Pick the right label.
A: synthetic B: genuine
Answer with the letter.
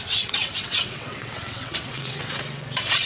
A